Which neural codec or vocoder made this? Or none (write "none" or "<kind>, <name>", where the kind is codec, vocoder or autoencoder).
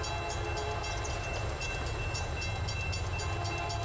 none